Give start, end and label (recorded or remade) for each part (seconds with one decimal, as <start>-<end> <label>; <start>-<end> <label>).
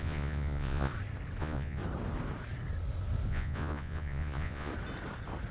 0.0-0.9 remade; 0.9-1.4 recorded; 1.4-1.8 remade; 1.8-3.3 recorded; 3.3-4.7 remade; 4.7-5.5 recorded